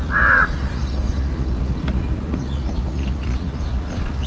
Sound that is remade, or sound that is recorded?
remade